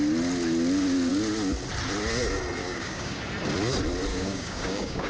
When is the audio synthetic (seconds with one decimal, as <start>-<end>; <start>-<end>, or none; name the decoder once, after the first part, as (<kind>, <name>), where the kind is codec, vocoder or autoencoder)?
2.6-3.2 (codec, DAC); 4.1-5.1